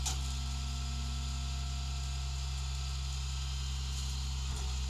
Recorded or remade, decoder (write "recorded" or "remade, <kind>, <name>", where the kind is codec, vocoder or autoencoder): recorded